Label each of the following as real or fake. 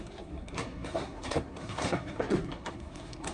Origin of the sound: fake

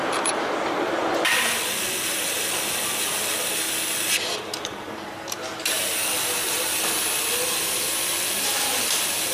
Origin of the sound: real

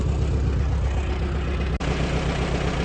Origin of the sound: real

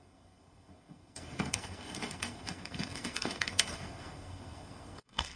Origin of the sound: fake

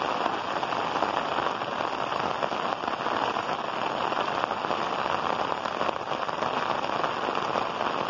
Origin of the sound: real